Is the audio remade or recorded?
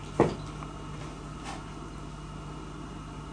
recorded